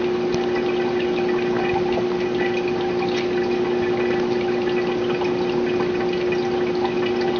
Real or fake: real